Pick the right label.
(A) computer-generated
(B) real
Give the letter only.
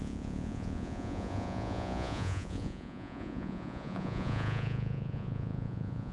A